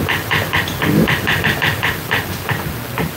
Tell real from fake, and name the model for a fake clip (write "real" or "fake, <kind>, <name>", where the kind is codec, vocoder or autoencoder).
real